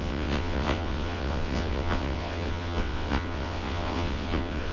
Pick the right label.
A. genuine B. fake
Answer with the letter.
B